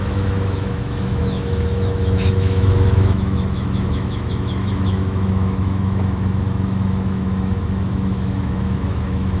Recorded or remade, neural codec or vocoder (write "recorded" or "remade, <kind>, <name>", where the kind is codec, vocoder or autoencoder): remade, autoencoder, DAC-VAE